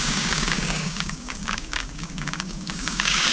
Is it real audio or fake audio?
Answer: fake